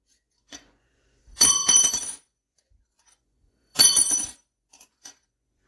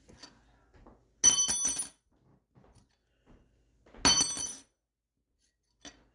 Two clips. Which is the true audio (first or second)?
second